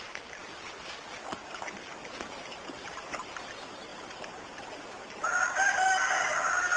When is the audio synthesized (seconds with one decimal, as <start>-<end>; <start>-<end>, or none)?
none